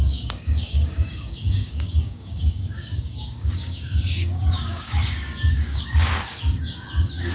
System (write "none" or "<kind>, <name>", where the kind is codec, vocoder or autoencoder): codec, DAC